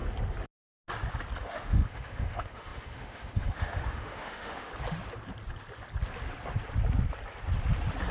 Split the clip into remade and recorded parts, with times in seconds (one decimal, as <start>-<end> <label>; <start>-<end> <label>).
0.0-1.4 recorded; 1.4-4.7 remade; 4.7-8.1 recorded